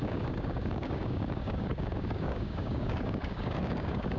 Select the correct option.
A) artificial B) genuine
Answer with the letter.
A